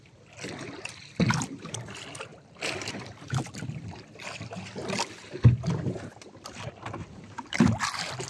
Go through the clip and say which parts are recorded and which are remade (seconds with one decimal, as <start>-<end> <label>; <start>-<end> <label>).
0.0-2.3 remade; 2.3-2.9 recorded; 2.9-8.3 remade